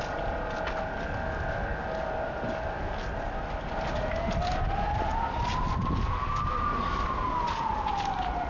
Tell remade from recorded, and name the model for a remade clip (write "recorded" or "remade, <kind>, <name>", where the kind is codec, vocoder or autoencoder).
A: recorded